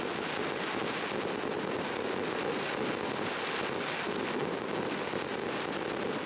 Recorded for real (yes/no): yes